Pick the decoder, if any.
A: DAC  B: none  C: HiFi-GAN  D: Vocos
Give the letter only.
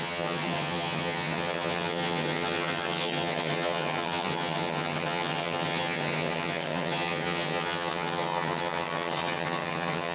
C